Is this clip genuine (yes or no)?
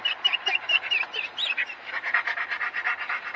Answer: yes